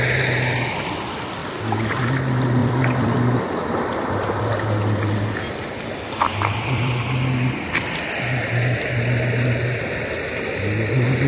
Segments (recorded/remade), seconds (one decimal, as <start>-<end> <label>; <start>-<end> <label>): 0.0-2.6 recorded; 2.6-4.4 remade; 4.4-6.3 recorded; 6.3-6.9 remade; 6.9-11.3 recorded